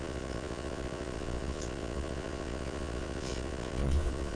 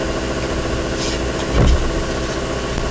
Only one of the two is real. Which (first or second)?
second